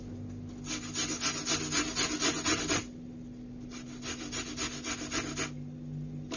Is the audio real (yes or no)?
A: yes